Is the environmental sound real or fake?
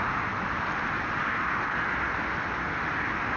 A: real